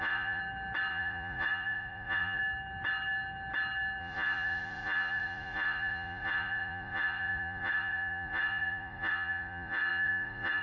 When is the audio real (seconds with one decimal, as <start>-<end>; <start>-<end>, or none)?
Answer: 0.4-0.9; 2.4-4.0